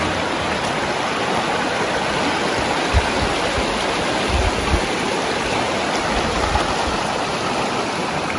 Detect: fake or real real